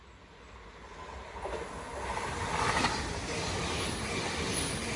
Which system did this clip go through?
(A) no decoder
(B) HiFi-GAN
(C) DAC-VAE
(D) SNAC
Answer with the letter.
A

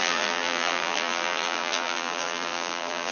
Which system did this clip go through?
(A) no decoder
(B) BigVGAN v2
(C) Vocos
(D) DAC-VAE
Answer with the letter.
B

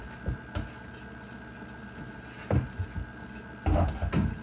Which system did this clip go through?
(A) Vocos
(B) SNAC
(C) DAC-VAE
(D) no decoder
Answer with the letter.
D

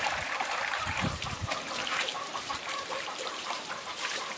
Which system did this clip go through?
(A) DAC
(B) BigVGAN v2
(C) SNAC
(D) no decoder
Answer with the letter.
B